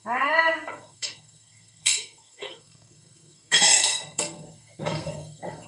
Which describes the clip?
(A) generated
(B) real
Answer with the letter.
A